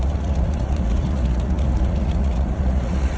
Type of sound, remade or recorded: remade